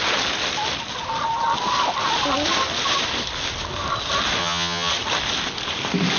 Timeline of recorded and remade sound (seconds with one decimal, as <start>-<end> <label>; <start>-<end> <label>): 0.0-4.4 recorded; 4.4-4.9 remade; 4.9-6.2 recorded